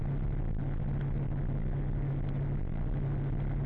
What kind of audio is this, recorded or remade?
recorded